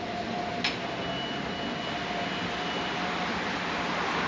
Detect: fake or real real